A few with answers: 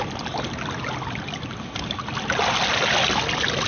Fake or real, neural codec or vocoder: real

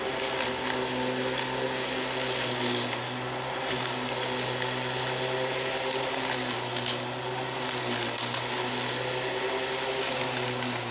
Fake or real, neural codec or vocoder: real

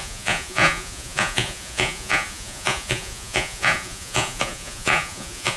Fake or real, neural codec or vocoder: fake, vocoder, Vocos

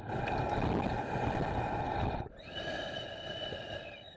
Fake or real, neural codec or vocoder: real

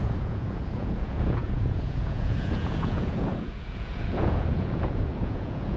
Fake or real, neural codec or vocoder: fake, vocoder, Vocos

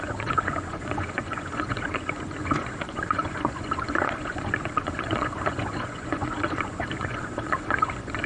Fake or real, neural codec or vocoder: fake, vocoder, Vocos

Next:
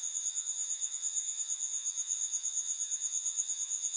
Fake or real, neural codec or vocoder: fake, vocoder, Vocos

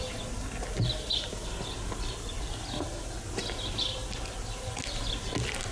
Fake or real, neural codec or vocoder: real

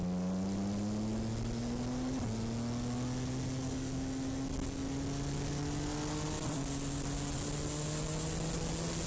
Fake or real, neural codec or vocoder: real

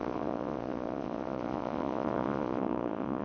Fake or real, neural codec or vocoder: fake, vocoder, Vocos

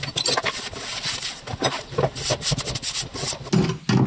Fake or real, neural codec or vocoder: real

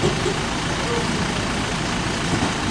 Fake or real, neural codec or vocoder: real